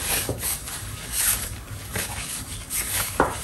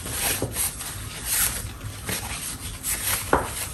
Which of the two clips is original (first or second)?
second